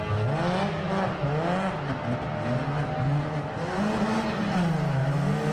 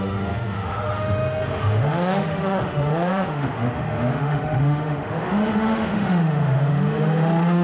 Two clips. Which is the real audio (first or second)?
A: first